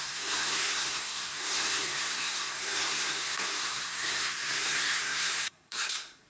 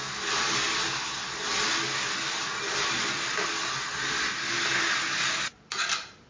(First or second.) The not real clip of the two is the first